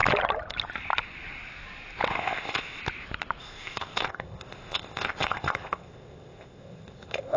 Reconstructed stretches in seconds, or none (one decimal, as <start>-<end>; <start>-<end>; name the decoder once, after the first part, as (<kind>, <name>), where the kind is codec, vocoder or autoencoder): 2.1-2.8 (codec, ZipCodec); 3.4-7.4